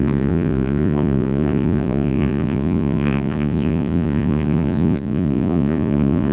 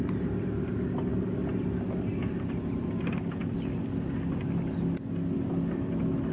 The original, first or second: second